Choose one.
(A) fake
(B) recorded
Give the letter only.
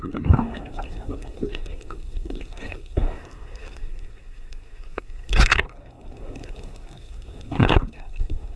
A